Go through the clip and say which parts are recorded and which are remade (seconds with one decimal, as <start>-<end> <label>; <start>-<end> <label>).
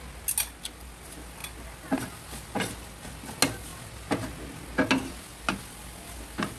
0.0-6.6 recorded